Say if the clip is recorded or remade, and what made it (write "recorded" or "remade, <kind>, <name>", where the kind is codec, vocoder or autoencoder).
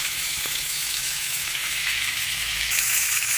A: remade, autoencoder, DAC-VAE